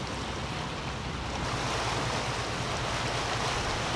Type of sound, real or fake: real